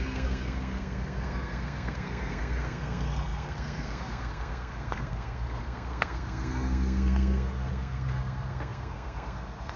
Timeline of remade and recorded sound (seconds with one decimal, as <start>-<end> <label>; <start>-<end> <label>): 0.0-9.8 remade